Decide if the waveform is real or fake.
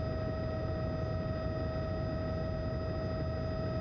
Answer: real